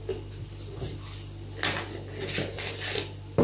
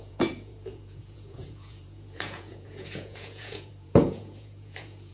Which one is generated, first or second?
second